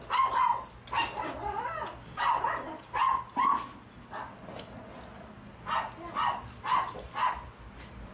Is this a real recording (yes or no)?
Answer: yes